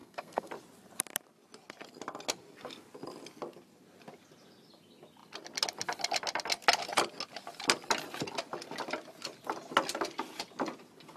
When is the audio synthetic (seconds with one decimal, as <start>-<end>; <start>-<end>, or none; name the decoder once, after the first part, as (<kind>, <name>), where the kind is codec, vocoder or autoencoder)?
0.0-0.5 (codec, SNAC)